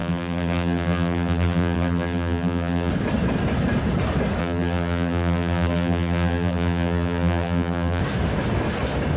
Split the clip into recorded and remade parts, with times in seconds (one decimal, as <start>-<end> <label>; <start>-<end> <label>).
0.0-2.9 remade; 2.9-4.4 recorded; 4.4-8.0 remade; 8.0-9.2 recorded